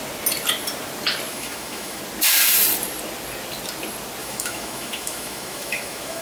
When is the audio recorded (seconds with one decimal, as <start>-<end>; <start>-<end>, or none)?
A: 0.0-1.3; 2.0-4.2